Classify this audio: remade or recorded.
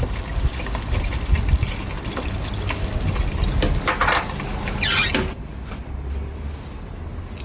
recorded